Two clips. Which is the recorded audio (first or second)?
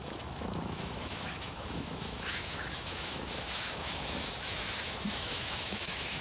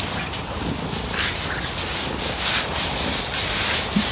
second